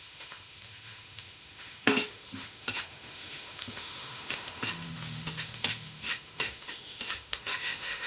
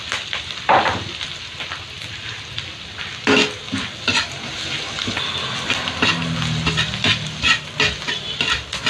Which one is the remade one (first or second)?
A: first